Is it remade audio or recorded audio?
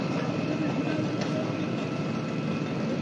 recorded